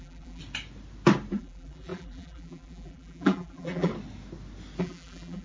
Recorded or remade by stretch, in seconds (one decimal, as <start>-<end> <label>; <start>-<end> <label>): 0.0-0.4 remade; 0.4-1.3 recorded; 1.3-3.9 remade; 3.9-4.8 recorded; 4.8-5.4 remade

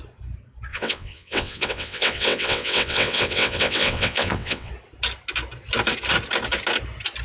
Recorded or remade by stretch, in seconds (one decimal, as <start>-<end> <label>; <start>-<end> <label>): 0.0-0.7 recorded; 0.7-4.7 remade; 4.7-7.2 recorded

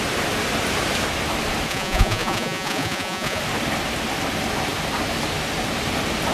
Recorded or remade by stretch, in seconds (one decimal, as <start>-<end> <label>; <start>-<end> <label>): 0.0-1.7 recorded; 1.7-3.4 remade; 3.4-6.3 recorded